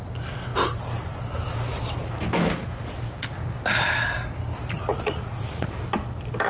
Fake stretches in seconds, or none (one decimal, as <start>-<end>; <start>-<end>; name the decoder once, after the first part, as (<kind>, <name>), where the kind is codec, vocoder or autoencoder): 4.9-5.7 (vocoder, Vocos)